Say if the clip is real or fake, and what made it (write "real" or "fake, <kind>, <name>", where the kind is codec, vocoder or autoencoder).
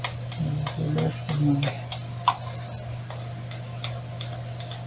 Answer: real